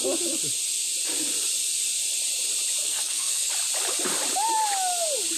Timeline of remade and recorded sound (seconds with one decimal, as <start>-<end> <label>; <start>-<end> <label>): 0.0-2.8 recorded; 2.8-3.5 remade; 3.5-5.4 recorded